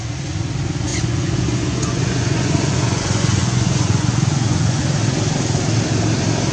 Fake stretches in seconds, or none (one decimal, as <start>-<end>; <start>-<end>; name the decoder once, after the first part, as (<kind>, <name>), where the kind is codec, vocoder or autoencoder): 0.9-4.8 (vocoder, Vocos)